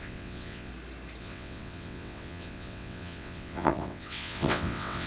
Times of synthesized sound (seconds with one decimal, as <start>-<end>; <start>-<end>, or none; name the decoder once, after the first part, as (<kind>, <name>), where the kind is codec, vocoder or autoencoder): 0.0-0.7 (vocoder, WaveNeXt); 1.2-5.1